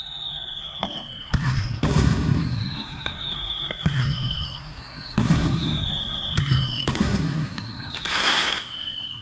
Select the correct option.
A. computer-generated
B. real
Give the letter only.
A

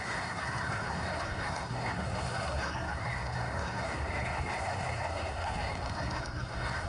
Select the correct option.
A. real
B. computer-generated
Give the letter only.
B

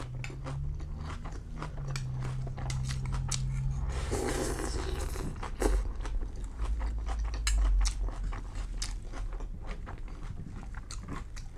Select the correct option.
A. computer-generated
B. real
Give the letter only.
B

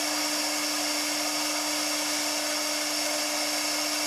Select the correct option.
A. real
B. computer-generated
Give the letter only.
A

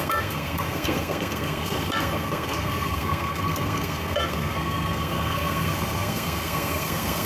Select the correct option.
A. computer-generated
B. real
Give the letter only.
A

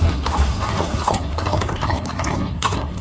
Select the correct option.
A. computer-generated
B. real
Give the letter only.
A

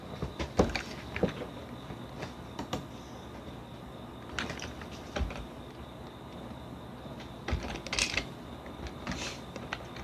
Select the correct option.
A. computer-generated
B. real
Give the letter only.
B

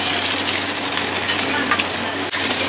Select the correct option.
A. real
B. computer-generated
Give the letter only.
A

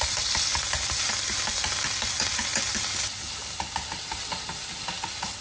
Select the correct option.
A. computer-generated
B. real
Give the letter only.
B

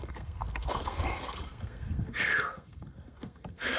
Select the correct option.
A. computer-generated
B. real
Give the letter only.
A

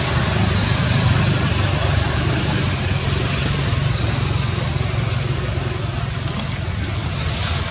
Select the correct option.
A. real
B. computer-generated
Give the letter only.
A